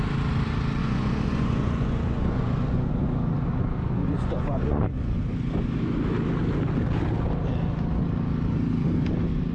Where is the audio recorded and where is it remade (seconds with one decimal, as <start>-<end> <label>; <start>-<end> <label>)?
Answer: 0.0-0.8 recorded; 0.8-2.9 remade; 2.9-3.5 recorded; 3.5-5.0 remade; 5.0-9.5 recorded